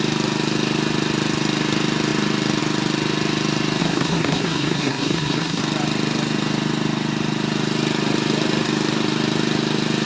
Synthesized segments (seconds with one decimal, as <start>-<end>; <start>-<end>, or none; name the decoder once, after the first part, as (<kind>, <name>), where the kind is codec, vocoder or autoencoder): 3.8-5.6 (codec, SNAC)